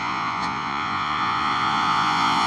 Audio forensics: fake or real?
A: fake